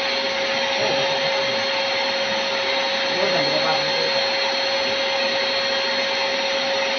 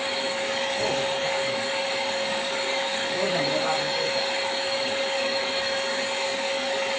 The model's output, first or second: second